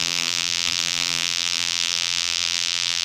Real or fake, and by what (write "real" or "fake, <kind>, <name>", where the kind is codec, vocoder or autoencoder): fake, vocoder, BigVGAN v2